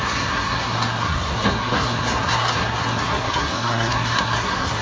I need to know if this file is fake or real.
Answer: fake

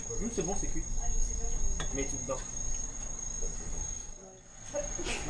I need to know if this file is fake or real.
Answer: real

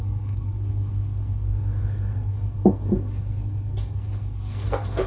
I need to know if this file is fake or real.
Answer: fake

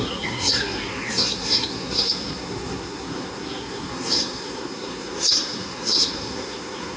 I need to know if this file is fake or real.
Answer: fake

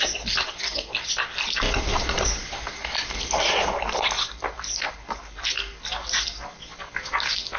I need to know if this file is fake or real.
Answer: real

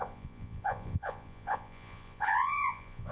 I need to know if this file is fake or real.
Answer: fake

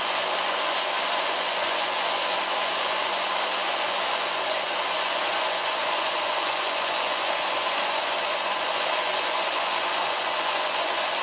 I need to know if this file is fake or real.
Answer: fake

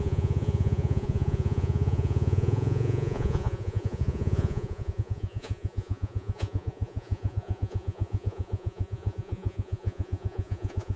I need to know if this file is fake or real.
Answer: fake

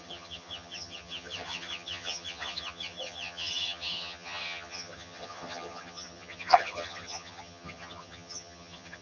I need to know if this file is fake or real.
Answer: fake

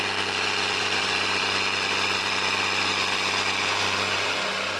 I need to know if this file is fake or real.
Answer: fake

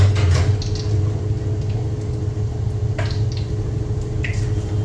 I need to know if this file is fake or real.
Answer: real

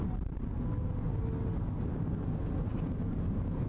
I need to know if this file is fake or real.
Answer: real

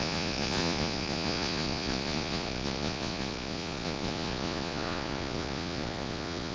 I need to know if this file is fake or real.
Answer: fake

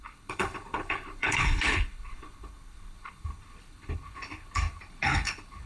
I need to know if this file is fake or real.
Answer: fake